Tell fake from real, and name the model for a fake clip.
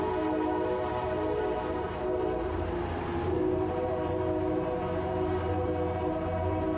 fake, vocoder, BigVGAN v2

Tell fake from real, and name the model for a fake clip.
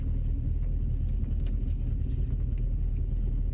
real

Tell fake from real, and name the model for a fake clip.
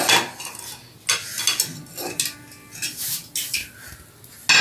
real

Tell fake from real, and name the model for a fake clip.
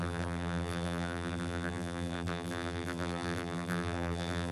fake, vocoder, BigVGAN v2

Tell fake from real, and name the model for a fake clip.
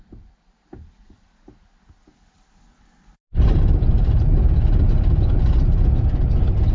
real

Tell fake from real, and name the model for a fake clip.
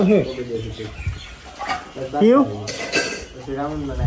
real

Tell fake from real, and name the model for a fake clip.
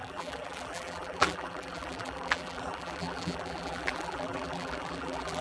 fake, vocoder, BigVGAN v2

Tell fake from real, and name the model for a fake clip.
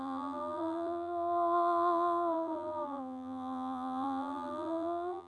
fake, vocoder, BigVGAN v2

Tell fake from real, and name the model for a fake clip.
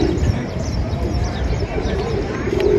fake, vocoder, BigVGAN v2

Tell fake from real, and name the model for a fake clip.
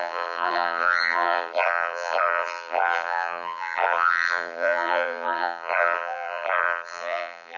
fake, vocoder, BigVGAN v2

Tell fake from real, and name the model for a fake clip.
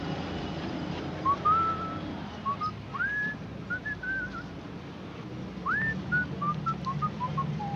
real